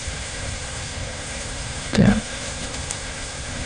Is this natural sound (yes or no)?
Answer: no